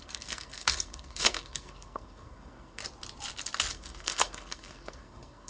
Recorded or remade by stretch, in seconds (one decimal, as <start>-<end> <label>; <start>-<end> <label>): 0.0-2.8 remade; 2.8-3.7 recorded; 3.7-5.5 remade